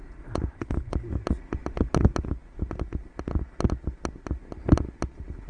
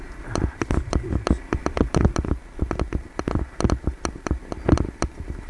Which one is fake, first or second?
second